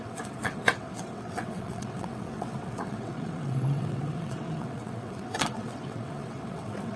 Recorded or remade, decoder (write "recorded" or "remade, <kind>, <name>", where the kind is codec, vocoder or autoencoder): remade, vocoder, WaveNeXt